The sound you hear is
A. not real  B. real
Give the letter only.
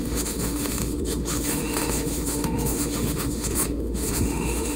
A